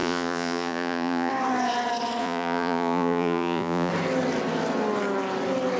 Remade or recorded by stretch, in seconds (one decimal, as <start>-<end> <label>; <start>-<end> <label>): 0.0-1.3 remade; 1.3-2.2 recorded; 2.2-3.9 remade; 3.9-5.8 recorded